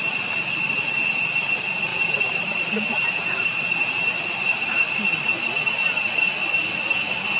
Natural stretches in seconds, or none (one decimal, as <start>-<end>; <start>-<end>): 0.0-1.9; 5.0-7.4